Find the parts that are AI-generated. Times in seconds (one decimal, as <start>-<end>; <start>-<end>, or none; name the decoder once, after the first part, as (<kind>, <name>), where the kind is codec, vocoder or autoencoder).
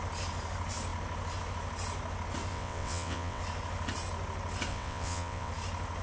2.5-3.4 (vocoder, WaveNeXt); 4.7-5.5